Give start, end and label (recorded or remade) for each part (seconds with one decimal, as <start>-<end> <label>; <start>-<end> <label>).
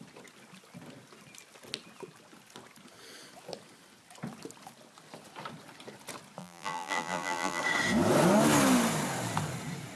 0.0-6.4 recorded; 6.4-7.6 remade; 7.6-10.0 recorded